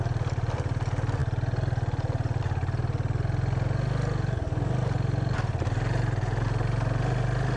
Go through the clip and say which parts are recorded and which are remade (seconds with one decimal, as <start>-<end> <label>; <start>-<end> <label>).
0.0-7.6 recorded